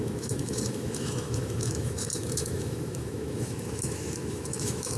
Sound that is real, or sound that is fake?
fake